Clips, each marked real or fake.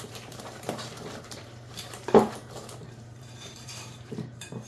fake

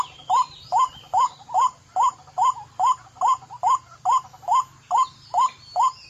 real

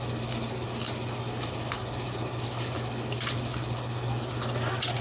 real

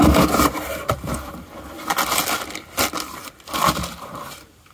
real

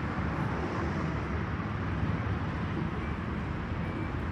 real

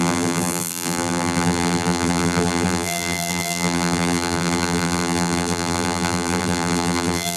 fake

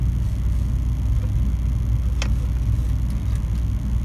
real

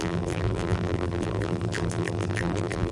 fake